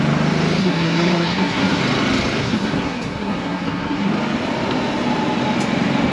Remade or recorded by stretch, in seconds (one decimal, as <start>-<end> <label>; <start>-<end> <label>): 0.0-0.6 recorded; 0.6-1.8 remade; 1.8-2.4 recorded; 2.4-4.1 remade; 4.1-6.1 recorded